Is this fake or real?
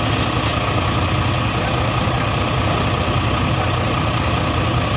real